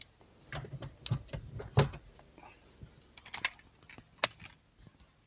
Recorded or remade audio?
recorded